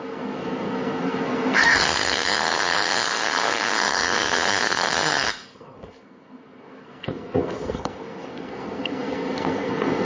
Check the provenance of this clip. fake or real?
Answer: fake